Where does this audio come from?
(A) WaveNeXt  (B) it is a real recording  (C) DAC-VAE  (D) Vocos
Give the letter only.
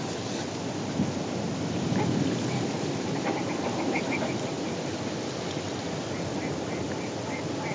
B